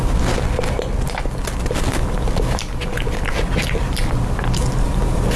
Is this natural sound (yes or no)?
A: yes